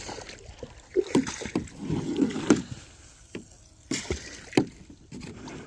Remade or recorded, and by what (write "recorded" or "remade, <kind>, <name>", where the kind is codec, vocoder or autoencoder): recorded